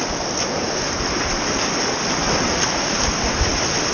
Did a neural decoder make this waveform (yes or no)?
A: no